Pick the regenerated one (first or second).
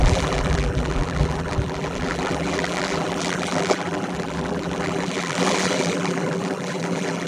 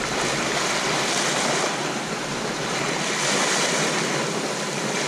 first